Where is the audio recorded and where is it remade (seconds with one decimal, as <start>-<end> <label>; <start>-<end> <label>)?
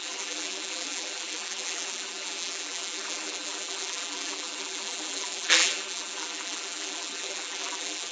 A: 0.0-8.1 remade